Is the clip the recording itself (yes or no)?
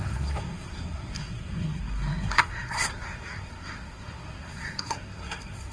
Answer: no